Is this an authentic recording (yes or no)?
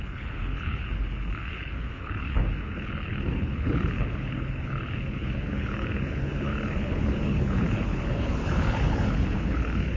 no